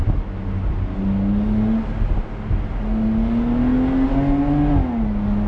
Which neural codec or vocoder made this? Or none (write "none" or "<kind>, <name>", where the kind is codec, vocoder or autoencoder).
none